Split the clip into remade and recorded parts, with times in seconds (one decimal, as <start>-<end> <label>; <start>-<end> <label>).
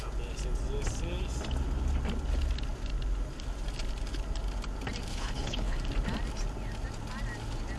0.0-5.1 recorded; 5.1-5.8 remade; 5.8-7.8 recorded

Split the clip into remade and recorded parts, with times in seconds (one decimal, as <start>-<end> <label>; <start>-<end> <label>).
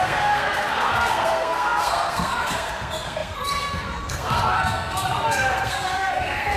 0.0-6.6 remade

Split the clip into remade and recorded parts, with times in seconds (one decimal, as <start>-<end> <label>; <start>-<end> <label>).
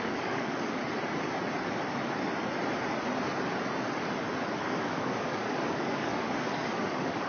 0.0-0.8 remade; 0.8-4.6 recorded; 4.6-7.3 remade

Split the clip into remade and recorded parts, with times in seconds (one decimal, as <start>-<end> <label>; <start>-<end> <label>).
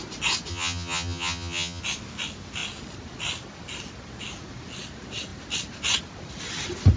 0.0-0.5 recorded; 0.5-1.8 remade; 1.8-7.0 recorded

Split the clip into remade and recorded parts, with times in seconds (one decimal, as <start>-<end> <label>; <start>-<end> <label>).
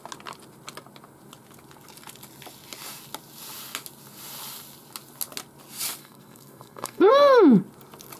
0.0-6.0 recorded; 6.0-7.1 remade; 7.1-8.2 recorded